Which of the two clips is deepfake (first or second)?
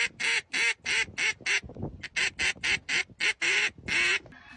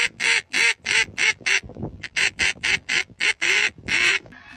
second